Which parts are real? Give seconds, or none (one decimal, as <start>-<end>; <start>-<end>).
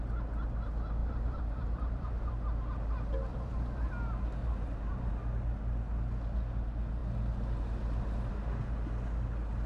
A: 0.0-1.0; 2.3-3.3; 3.9-4.4; 5.1-9.7